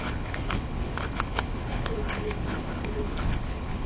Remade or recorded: remade